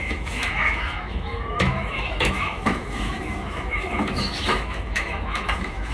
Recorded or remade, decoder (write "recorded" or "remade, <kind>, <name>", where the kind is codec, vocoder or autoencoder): remade, autoencoder, DAC-VAE